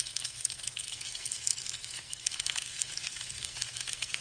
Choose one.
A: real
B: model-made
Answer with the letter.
B